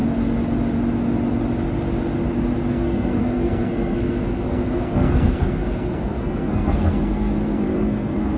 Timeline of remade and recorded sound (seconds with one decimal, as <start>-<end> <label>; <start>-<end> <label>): 0.0-2.7 recorded; 2.7-8.4 remade